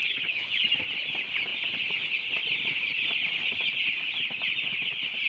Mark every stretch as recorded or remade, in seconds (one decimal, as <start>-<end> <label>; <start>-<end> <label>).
0.0-0.5 remade; 0.5-5.3 recorded